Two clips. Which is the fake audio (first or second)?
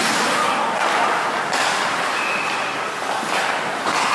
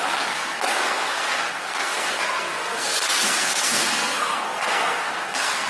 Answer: second